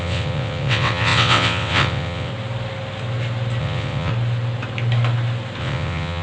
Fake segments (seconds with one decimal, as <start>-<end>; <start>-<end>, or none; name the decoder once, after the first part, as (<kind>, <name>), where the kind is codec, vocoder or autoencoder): 0.0-2.3 (vocoder, WaveNeXt); 3.6-4.1; 5.6-6.2